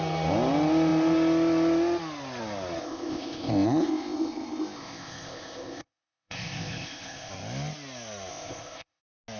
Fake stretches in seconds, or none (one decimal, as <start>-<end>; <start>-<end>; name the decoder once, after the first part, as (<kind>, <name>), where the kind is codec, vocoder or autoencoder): 2.8-7.3 (codec, ZipCodec); 8.3-9.0